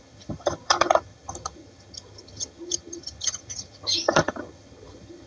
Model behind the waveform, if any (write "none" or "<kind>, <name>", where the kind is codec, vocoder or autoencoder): vocoder, HiFi-GAN